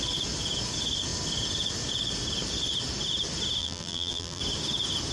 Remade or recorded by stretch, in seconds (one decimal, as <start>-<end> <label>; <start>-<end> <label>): 0.0-3.6 recorded; 3.6-4.4 remade; 4.4-5.1 recorded